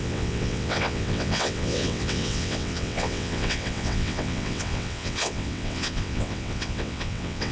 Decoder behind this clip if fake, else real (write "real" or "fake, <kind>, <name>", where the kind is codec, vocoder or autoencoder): fake, vocoder, WaveNeXt